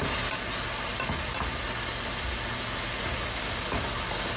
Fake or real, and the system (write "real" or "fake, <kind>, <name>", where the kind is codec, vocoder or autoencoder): real